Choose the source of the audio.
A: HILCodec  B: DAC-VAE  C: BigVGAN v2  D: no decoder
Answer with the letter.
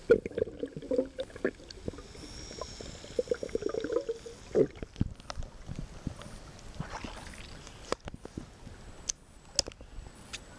D